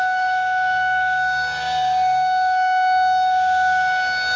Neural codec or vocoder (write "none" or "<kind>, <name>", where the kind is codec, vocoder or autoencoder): codec, DAC